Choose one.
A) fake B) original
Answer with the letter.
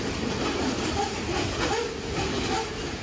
B